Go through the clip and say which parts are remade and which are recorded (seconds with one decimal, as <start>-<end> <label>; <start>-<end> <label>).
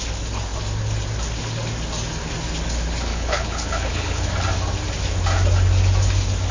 0.0-3.1 recorded; 3.1-4.2 remade; 4.2-6.5 recorded